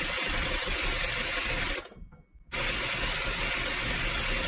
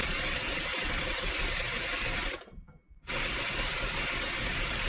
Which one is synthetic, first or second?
second